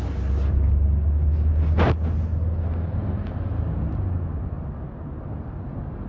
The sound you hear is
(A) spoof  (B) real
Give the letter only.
B